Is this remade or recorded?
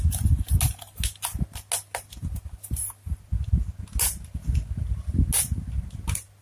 recorded